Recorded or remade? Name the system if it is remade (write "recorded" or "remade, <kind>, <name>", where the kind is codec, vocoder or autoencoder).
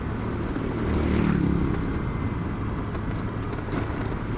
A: recorded